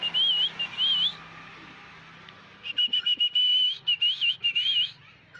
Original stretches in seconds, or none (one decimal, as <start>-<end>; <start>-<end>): 0.0-5.4